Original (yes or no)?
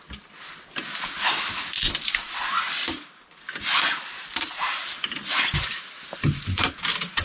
yes